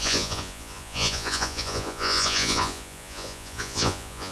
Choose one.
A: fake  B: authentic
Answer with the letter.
A